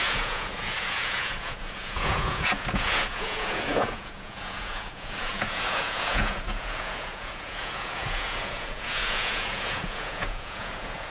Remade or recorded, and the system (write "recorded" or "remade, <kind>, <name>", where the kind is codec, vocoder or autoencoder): remade, vocoder, Vocos